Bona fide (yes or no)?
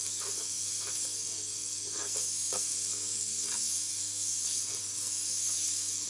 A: no